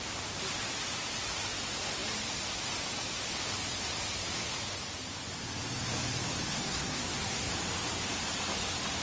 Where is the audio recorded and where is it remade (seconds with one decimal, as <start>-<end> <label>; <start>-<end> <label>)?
0.0-6.5 recorded; 6.5-7.5 remade; 7.5-9.0 recorded